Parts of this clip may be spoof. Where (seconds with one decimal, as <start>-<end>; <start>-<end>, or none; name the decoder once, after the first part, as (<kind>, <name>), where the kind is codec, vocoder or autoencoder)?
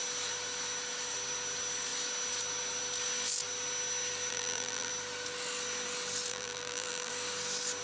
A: 4.3-4.9 (vocoder, BigVGAN v2); 6.3-7.1